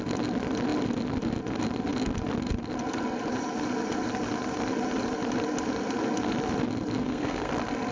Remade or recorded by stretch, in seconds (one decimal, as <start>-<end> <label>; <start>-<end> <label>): 0.0-7.0 recorded; 7.0-7.5 remade; 7.5-7.9 recorded